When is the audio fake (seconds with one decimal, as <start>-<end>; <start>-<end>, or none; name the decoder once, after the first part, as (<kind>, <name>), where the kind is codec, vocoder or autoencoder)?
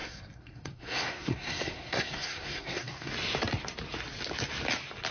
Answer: 0.0-3.1 (codec, SNAC)